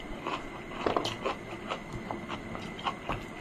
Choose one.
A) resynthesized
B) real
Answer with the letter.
B